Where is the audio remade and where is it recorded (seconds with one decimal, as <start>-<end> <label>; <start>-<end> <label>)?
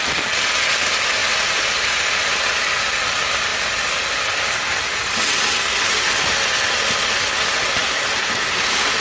0.0-9.0 recorded